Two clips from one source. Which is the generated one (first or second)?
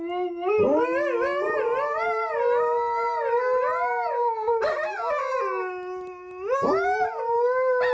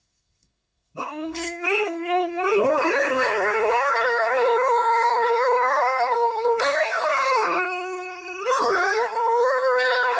second